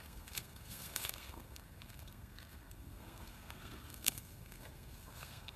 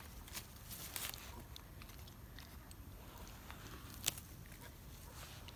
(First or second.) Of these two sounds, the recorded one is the second